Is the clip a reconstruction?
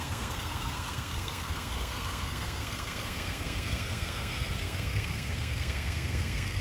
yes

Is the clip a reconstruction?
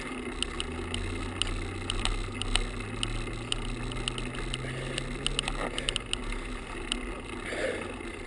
no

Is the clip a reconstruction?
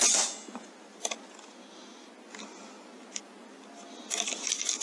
no